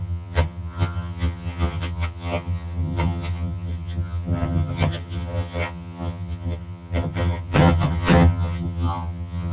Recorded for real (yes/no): no